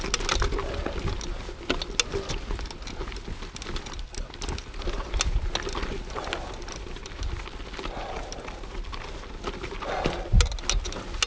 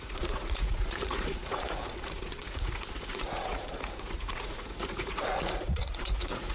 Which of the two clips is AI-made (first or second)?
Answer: second